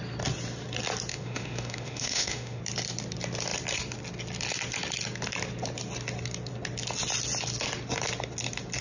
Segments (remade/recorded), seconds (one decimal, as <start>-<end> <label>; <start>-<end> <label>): 0.0-1.1 recorded; 1.1-2.6 remade; 2.6-8.8 recorded